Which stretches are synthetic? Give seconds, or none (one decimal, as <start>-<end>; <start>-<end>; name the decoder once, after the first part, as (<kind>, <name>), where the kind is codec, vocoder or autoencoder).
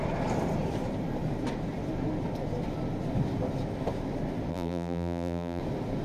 4.5-5.6 (vocoder, BigVGAN v2)